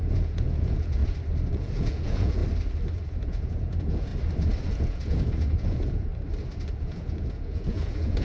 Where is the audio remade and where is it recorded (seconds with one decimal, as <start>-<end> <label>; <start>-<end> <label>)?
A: 0.0-1.0 remade; 1.0-1.5 recorded; 1.5-2.4 remade; 2.4-3.1 recorded; 3.1-4.1 remade; 4.1-4.6 recorded; 4.6-6.1 remade; 6.1-6.8 recorded; 6.8-8.2 remade